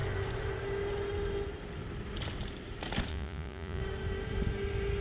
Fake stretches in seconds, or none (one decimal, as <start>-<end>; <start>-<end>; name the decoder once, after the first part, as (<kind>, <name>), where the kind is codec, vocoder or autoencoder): 3.1-3.8 (vocoder, Vocos)